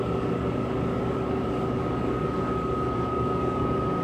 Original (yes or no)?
no